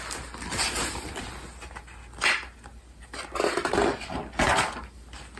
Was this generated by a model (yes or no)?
no